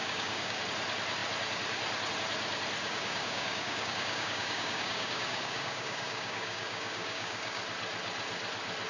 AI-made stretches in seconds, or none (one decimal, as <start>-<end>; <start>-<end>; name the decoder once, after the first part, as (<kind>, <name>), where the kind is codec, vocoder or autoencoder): 0.0-0.6 (codec, DAC); 2.8-7.6